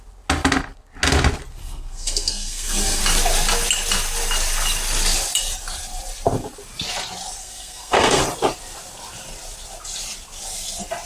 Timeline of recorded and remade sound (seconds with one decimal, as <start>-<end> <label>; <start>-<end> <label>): 0.0-1.6 recorded; 1.6-3.0 remade; 3.0-7.4 recorded; 7.4-8.2 remade; 8.2-11.1 recorded